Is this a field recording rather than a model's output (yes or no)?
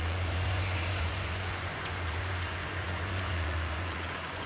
no